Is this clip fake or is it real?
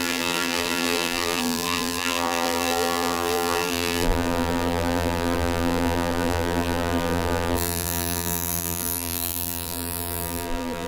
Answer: fake